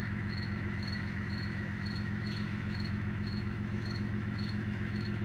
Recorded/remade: remade